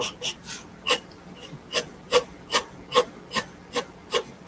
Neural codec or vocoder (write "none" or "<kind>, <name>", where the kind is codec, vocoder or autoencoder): none